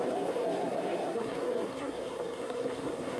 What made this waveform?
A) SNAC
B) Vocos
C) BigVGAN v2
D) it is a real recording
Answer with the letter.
A